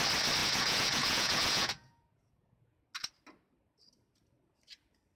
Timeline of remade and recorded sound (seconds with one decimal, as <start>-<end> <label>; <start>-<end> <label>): 0.0-0.4 recorded; 0.4-2.8 remade; 2.8-5.2 recorded